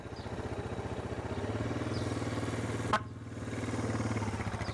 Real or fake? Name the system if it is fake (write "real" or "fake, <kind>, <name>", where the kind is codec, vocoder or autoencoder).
real